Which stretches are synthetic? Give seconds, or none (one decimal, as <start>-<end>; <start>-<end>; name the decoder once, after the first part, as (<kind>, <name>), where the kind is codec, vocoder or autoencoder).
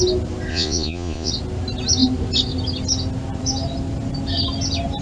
0.5-1.3 (vocoder, Vocos)